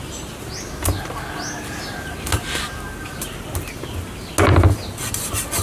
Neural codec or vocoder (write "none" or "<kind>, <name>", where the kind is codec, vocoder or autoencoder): none